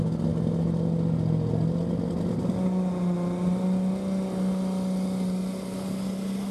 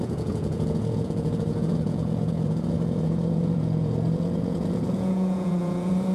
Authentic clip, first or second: first